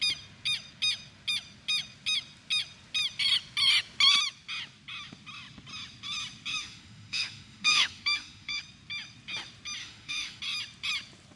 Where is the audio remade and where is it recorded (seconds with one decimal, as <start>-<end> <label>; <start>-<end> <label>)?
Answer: 0.0-6.5 recorded; 6.5-8.6 remade; 8.6-9.8 recorded; 9.8-10.4 remade; 10.4-11.4 recorded